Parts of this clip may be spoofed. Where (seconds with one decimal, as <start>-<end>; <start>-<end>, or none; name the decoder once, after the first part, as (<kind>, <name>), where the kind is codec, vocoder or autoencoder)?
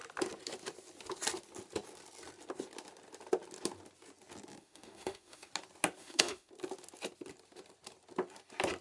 4.6-5.5 (autoencoder, DAC-VAE); 6.0-6.5